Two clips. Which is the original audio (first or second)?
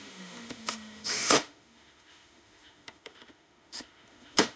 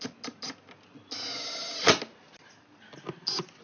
second